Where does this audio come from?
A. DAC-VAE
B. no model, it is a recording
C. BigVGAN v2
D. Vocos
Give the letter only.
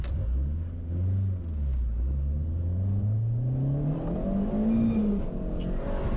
B